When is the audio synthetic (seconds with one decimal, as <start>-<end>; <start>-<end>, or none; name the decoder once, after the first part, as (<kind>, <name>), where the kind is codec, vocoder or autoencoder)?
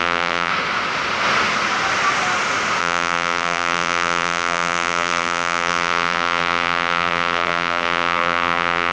0.0-0.5 (vocoder, BigVGAN v2); 2.8-8.9